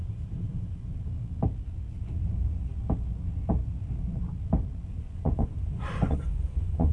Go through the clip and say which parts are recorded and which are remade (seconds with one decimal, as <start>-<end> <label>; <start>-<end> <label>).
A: 0.0-0.9 remade; 0.9-4.9 recorded; 4.9-6.9 remade